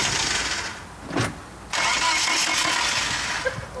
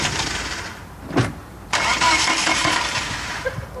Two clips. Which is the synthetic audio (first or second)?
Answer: second